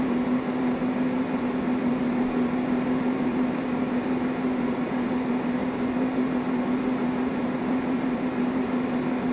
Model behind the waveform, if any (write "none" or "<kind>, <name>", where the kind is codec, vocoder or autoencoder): vocoder, BigVGAN v2